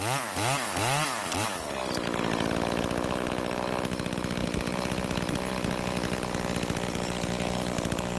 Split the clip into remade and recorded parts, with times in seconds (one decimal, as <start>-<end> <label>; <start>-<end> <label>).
0.0-8.2 recorded